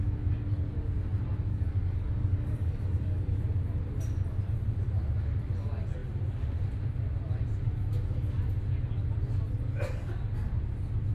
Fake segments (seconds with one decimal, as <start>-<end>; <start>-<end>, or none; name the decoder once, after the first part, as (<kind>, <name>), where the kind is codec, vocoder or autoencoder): 1.5-3.4 (codec, DAC)